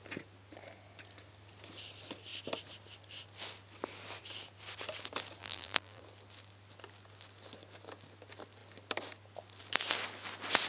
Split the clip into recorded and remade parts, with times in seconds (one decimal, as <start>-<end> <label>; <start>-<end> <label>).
0.0-5.4 recorded; 5.4-6.0 remade; 6.0-10.7 recorded